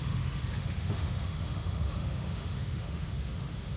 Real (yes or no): no